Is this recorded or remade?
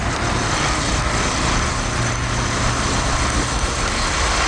recorded